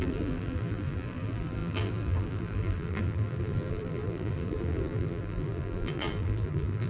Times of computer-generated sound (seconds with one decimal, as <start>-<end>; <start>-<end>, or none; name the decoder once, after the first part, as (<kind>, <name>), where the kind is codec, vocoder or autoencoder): 0.0-6.9 (vocoder, BigVGAN v2)